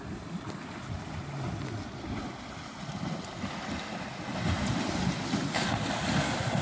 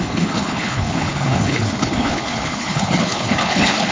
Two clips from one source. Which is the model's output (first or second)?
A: second